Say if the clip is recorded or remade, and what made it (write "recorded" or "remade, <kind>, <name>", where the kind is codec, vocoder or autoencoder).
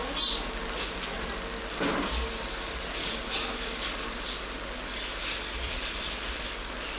recorded